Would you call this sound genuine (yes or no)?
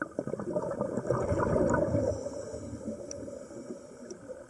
yes